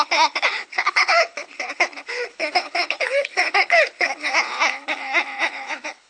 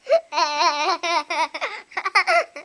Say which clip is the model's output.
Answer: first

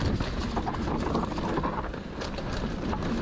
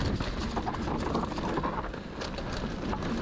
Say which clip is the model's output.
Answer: first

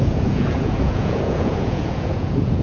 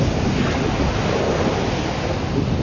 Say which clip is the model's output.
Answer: first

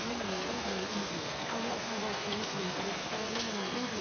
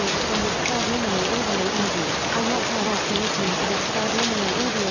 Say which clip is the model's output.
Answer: first